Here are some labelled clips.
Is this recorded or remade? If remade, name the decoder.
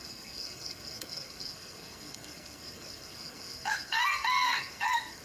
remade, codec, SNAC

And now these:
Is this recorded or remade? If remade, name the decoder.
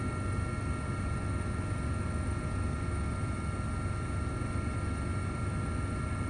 recorded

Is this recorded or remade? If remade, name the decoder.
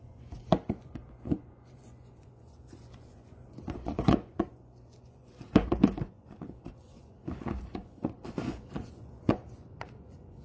remade, vocoder, Vocos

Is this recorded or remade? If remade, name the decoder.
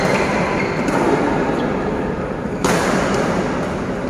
recorded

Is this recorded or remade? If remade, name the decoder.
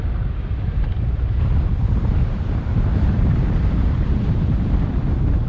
remade, vocoder, BigVGAN v2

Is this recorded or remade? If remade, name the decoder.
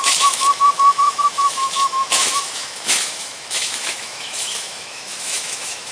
remade, autoencoder, DAC-VAE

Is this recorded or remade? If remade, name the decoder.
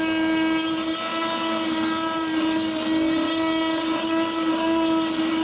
recorded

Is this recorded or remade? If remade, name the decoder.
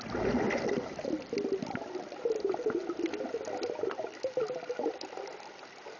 recorded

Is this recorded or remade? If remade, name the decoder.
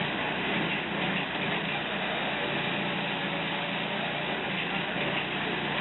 recorded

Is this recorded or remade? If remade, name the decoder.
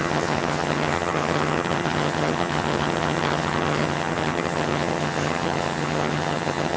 remade, vocoder, HiFi-GAN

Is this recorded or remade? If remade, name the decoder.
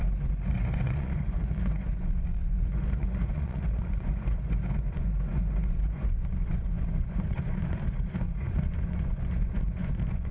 remade, vocoder, Vocos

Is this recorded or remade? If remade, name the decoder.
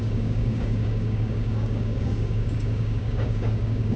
remade, codec, DAC